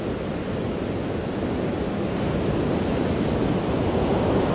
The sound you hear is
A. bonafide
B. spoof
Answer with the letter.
A